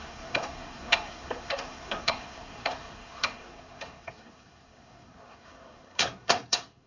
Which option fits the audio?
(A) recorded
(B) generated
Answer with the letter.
B